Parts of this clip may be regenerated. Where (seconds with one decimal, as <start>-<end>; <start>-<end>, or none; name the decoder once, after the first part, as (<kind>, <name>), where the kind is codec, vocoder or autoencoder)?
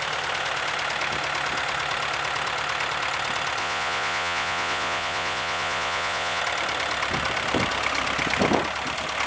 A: 3.6-6.4 (vocoder, Vocos)